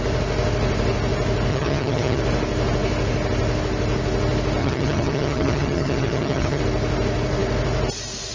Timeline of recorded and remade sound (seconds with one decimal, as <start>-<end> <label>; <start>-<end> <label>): 0.0-1.5 recorded; 1.5-2.2 remade; 2.2-4.6 recorded; 4.6-6.6 remade; 6.6-8.3 recorded